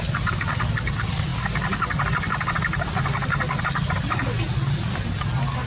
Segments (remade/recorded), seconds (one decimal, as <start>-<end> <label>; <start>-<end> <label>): 0.0-5.7 recorded